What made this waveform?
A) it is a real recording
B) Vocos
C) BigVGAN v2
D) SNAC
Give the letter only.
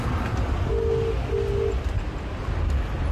A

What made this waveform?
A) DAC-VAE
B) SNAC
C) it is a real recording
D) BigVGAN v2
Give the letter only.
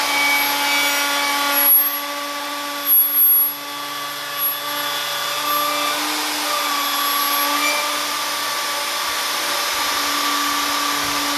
C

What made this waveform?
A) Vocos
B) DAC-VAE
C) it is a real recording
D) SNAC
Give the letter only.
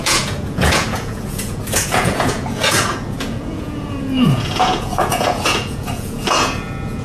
A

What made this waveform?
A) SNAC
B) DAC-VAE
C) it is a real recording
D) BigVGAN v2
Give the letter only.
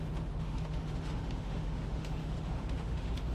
B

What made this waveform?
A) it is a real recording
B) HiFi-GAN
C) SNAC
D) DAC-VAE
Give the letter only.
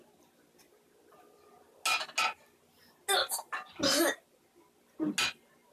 A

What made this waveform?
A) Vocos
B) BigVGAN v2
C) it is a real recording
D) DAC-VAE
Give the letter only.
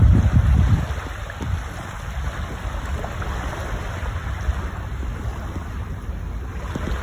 C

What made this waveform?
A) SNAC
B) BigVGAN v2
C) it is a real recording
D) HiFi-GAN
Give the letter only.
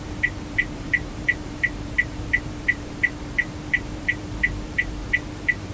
B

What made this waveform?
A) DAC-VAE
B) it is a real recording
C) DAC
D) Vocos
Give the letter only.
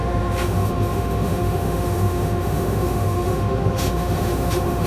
A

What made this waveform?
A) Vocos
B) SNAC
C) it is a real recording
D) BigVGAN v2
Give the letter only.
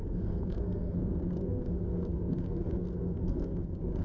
B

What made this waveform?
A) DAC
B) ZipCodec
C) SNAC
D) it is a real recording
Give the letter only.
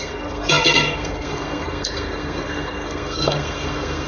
C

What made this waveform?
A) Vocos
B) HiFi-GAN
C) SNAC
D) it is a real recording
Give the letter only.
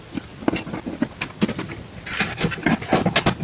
D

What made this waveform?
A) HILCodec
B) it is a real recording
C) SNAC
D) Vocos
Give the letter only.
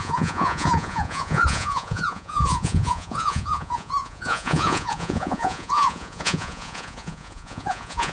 D